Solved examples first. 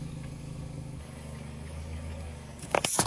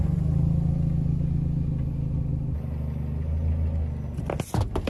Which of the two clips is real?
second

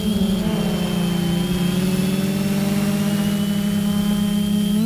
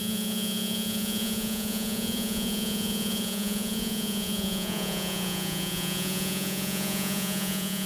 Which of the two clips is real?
first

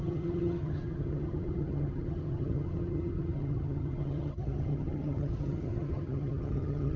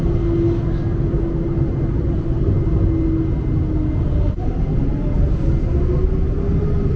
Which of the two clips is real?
second